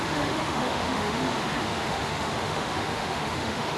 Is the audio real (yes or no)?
no